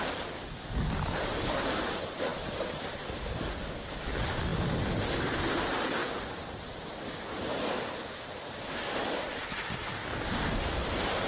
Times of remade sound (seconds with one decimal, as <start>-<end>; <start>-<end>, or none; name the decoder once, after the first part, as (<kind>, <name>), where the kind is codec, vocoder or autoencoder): none